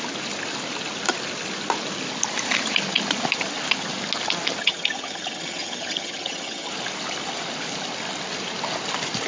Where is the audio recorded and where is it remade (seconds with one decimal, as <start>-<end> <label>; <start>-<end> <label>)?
0.0-4.6 recorded; 4.6-6.7 remade; 6.7-9.3 recorded